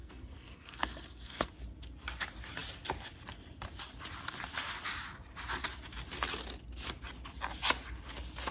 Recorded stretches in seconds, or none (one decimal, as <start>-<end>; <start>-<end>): 1.5-8.5